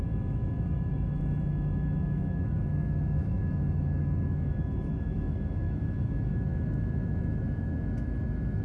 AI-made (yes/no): yes